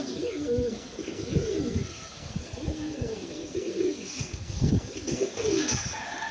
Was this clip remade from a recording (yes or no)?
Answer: yes